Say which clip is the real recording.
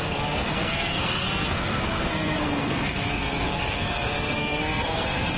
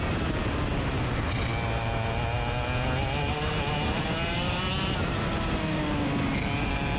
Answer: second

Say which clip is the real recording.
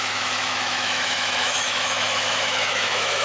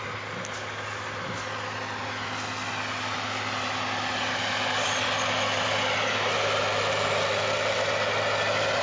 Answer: second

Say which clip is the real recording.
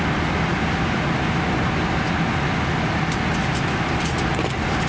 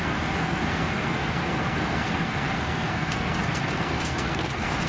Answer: first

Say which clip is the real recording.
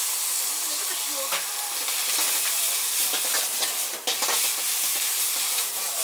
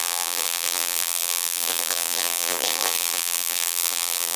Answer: first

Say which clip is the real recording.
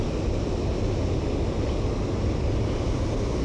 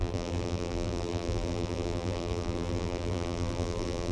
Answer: first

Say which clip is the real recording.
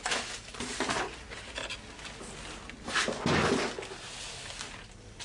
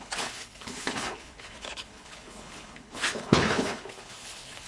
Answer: first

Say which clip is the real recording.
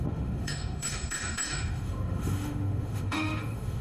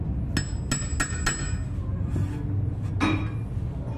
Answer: second